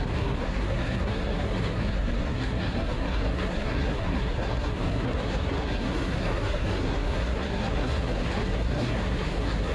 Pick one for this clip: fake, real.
fake